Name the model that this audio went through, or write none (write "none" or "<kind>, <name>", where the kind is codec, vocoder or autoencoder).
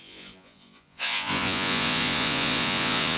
vocoder, Vocos